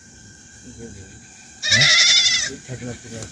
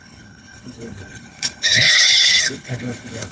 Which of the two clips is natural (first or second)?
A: first